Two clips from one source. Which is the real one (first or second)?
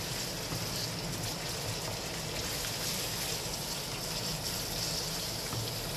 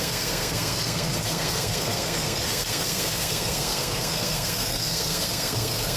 first